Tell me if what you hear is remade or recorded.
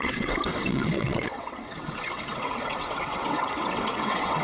remade